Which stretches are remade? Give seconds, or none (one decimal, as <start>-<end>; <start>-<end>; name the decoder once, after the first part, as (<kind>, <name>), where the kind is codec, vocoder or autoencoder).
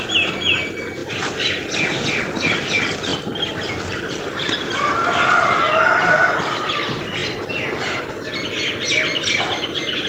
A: 1.0-2.6 (vocoder, BigVGAN v2)